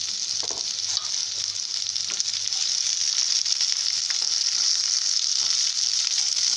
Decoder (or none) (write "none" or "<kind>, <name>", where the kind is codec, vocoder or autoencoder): none